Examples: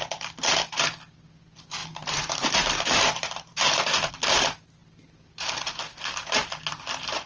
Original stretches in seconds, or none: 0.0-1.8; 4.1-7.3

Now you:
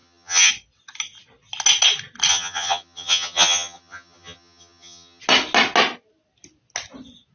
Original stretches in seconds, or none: 0.5-2.3; 5.2-7.3

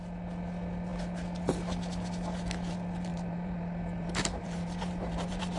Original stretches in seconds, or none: 0.0-3.1